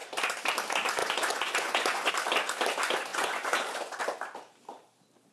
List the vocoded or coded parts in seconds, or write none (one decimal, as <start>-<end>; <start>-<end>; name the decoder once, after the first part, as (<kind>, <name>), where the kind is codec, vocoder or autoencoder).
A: 1.0-2.1 (vocoder, Vocos); 3.1-4.0